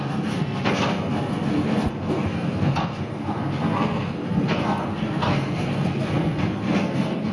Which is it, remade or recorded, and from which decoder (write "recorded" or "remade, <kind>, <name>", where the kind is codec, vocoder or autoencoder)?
remade, codec, SNAC